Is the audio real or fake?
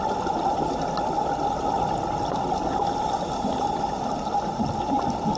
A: real